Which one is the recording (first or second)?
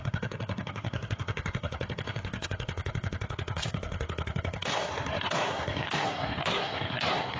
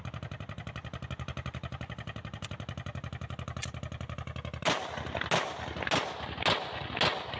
second